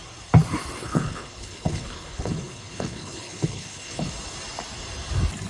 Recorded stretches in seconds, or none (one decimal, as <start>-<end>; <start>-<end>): 0.0-0.8; 4.1-5.5